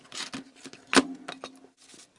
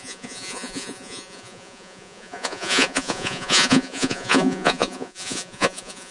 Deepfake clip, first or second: second